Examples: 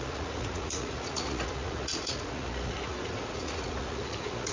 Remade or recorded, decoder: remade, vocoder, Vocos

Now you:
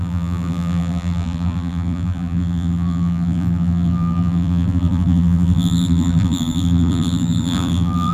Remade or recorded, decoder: remade, vocoder, BigVGAN v2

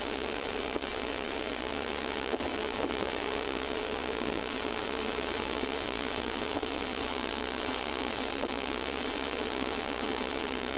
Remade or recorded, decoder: remade, vocoder, WaveNeXt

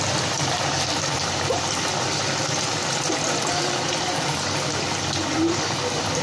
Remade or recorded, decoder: remade, vocoder, BigVGAN v2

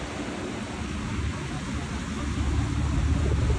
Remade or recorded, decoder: recorded